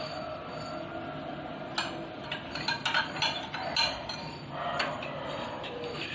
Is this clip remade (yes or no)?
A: no